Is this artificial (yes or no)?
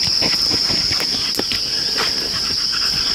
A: no